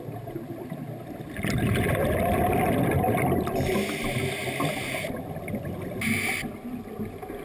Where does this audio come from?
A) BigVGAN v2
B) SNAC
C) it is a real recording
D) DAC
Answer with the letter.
C